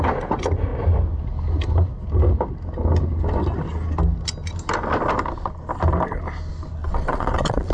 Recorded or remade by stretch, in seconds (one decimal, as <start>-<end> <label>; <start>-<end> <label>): 0.0-6.8 recorded; 6.8-7.7 remade